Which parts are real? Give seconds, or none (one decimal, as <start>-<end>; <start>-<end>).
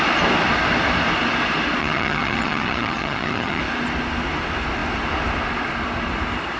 0.0-1.8; 3.6-6.6